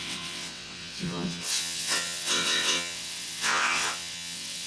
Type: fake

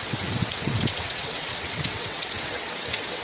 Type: fake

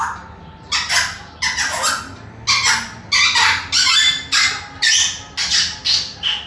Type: real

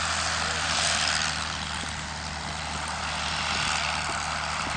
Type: real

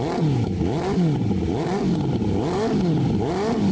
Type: real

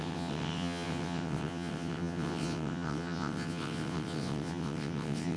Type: fake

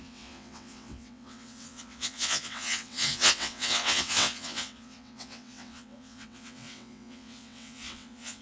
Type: fake